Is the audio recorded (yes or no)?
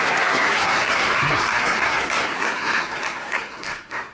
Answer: no